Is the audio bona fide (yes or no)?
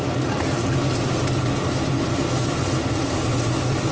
yes